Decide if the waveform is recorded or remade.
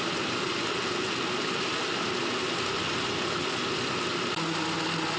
recorded